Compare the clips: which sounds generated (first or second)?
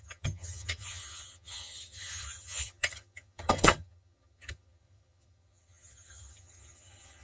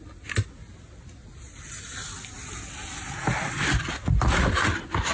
first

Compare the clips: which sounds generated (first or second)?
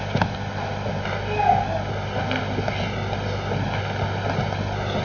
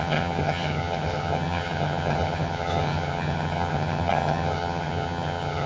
second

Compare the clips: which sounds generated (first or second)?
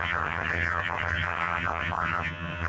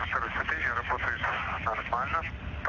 first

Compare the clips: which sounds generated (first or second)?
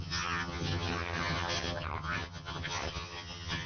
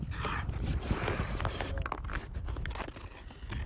first